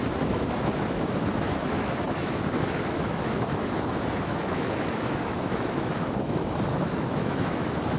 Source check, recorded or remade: remade